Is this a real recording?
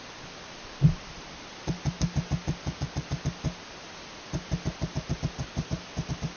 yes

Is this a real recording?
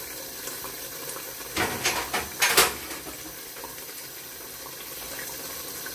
yes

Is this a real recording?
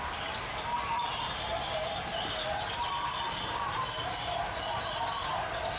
yes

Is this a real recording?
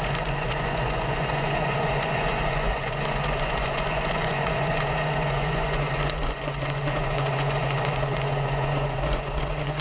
no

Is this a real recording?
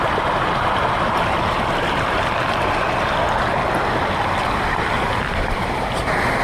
yes